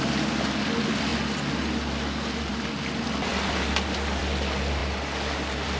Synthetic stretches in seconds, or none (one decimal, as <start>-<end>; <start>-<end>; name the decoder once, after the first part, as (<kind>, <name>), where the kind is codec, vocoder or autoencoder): none